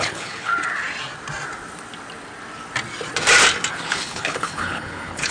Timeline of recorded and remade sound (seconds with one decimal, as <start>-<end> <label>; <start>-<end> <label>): 0.0-0.5 remade; 0.5-3.7 recorded; 3.7-5.3 remade